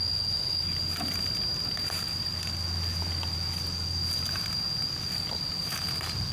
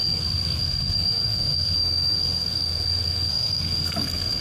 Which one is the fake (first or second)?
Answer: second